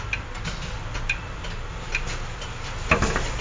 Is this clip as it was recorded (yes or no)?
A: yes